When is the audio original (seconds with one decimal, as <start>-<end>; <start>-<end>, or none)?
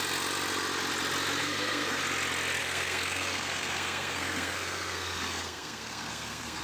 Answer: 0.0-1.4; 2.0-2.6